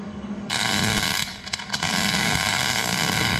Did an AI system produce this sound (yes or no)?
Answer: yes